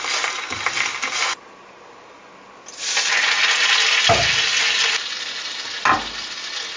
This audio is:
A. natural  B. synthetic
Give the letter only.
A